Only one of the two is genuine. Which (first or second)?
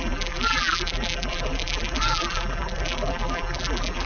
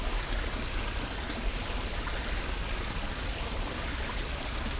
second